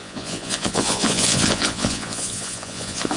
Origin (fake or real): fake